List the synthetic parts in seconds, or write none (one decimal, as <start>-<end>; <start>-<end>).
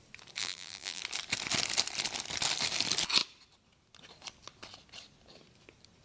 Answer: 0.4-1.0